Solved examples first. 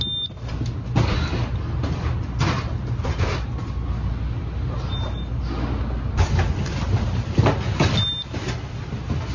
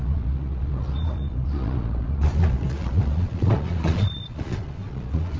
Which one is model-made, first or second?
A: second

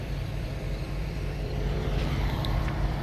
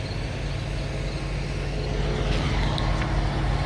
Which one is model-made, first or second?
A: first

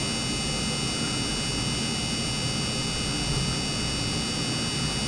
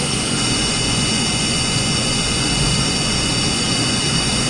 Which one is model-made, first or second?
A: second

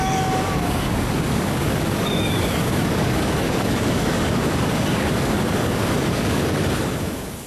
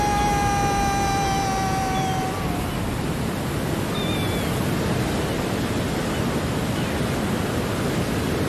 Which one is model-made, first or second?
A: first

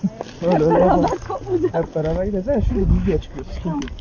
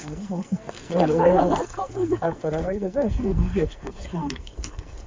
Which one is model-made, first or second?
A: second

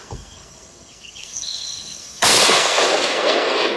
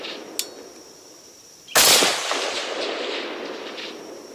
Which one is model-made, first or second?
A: first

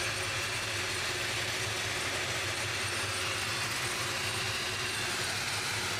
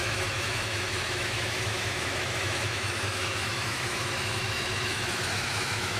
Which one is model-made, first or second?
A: second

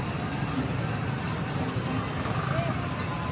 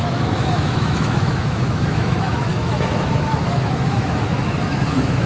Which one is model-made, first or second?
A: second